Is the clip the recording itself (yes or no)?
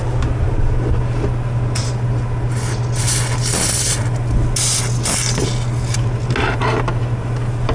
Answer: yes